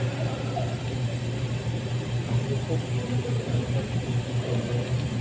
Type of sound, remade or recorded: recorded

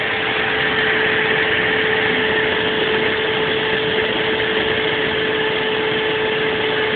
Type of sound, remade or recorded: recorded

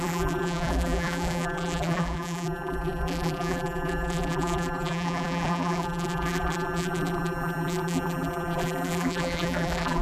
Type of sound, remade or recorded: remade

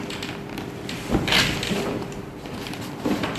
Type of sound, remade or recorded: remade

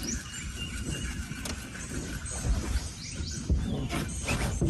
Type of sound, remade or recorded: recorded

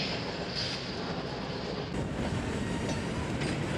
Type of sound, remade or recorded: recorded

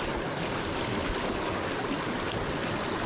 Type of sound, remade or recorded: recorded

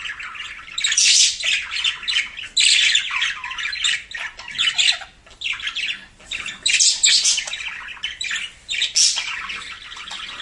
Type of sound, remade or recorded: recorded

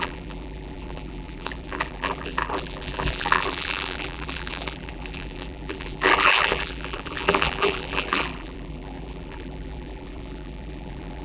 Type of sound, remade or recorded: remade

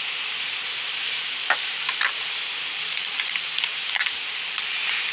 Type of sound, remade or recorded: remade